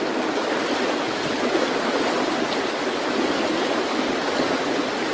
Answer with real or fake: real